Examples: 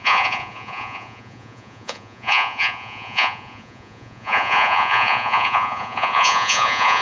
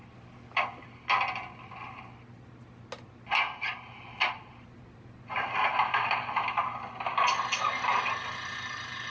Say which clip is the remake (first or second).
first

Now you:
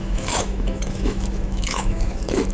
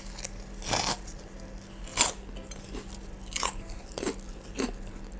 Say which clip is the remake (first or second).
first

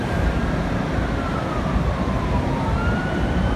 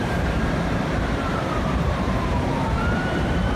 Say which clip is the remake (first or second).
second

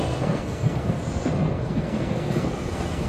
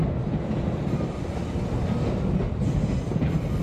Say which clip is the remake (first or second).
first